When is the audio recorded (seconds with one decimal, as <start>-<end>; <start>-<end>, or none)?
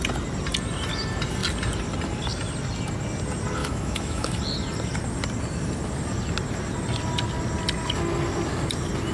0.0-3.6; 4.4-9.1